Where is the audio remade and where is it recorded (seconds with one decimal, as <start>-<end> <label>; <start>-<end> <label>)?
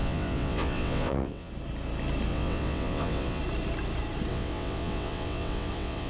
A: 0.0-1.5 remade; 1.5-2.3 recorded; 2.3-3.4 remade; 3.4-4.3 recorded; 4.3-6.1 remade